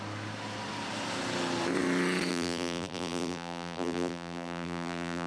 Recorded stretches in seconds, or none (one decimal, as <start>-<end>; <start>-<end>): 0.0-2.3